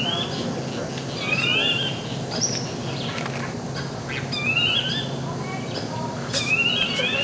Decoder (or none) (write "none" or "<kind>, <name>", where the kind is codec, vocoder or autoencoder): none